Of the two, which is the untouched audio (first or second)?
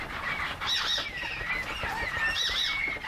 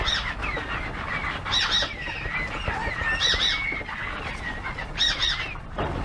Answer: second